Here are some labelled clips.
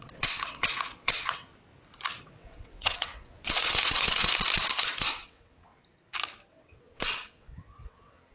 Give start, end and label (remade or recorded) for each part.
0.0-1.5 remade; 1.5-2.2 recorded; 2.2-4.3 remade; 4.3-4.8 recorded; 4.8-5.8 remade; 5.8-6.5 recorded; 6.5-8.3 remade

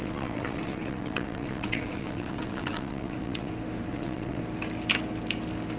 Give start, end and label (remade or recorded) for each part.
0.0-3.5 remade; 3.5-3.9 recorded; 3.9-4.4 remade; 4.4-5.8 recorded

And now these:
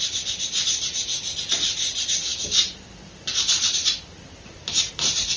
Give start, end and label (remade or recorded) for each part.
0.0-5.4 recorded

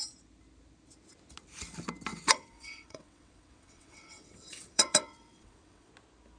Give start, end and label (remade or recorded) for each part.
0.0-2.1 recorded; 2.1-5.9 remade; 5.9-6.4 recorded

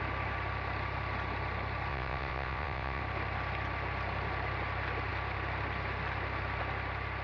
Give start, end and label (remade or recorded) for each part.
0.0-1.9 recorded; 1.9-3.0 remade; 3.0-7.2 recorded